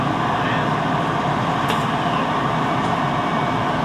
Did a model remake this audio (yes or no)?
no